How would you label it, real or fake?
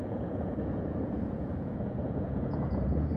fake